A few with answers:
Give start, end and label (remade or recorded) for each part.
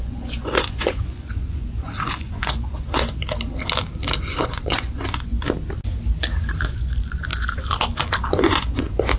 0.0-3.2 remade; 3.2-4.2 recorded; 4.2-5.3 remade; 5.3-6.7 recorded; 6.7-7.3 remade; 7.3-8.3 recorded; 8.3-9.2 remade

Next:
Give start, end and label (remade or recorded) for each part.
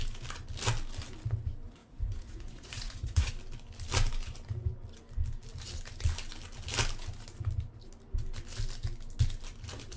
0.0-1.8 recorded; 1.8-3.3 remade; 3.3-10.0 recorded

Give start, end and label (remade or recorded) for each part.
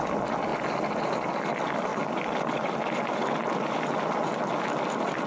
0.0-5.3 recorded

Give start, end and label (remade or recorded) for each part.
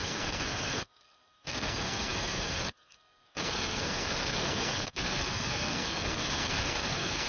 0.0-7.3 remade